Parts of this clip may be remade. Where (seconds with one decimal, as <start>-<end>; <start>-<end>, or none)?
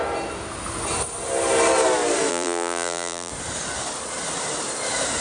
2.3-3.3